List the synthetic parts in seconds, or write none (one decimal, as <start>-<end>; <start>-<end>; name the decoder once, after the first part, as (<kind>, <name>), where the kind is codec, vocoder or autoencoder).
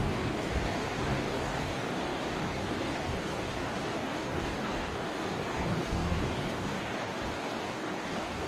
0.0-8.5 (codec, DAC)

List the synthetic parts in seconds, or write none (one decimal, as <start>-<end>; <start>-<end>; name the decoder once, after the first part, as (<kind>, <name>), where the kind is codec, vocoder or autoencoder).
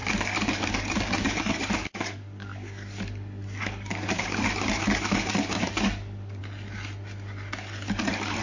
0.0-6.4 (codec, DAC); 7.9-8.4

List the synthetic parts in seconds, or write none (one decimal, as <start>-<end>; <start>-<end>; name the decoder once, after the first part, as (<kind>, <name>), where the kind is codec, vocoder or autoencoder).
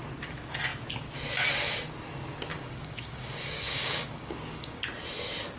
2.5-4.8 (codec, DAC)